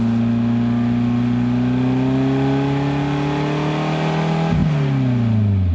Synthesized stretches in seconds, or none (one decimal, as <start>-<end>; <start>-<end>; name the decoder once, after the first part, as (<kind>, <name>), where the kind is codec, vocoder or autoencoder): none